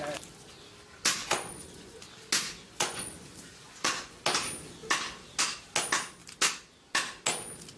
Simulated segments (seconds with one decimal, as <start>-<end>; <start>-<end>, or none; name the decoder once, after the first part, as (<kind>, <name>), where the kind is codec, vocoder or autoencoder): 1.2-2.0 (vocoder, Vocos); 2.6-4.2